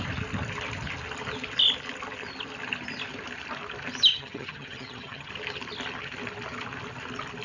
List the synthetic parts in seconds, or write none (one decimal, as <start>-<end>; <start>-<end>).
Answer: 4.1-5.3